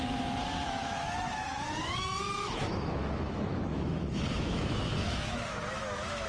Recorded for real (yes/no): no